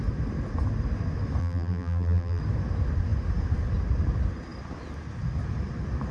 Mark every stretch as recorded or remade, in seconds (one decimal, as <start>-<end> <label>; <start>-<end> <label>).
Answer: 0.0-1.4 recorded; 1.4-2.4 remade; 2.4-6.1 recorded